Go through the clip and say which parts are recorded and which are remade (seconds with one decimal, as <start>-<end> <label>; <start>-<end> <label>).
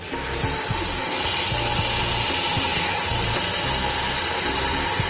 0.0-5.1 recorded